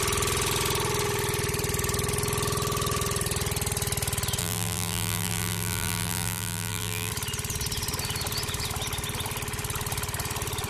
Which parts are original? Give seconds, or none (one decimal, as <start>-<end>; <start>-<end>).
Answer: 0.0-4.4; 7.1-10.7